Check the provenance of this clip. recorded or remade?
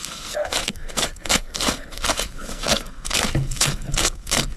remade